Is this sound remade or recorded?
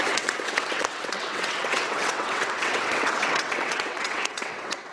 remade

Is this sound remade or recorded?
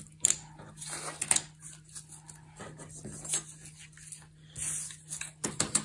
recorded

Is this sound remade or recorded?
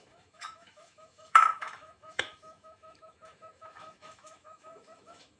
remade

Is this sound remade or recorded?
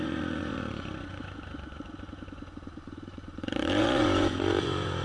remade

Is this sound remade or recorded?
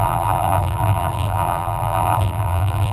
remade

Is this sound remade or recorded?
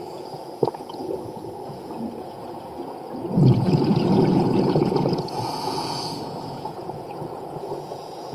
remade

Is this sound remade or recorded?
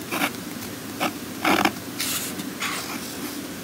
recorded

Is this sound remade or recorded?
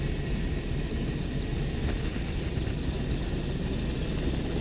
recorded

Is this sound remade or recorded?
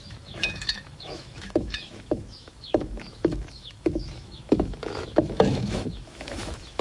remade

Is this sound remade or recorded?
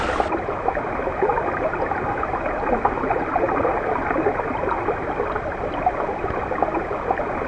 recorded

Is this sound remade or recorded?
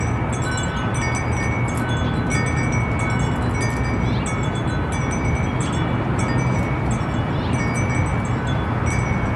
recorded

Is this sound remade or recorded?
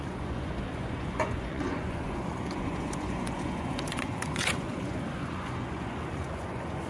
remade